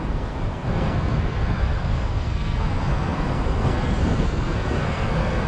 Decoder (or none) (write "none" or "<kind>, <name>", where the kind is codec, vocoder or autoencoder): codec, SNAC